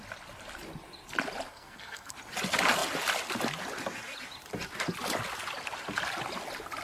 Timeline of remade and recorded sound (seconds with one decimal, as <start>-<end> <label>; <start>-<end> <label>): 0.0-1.5 recorded; 1.5-2.1 remade; 2.1-6.8 recorded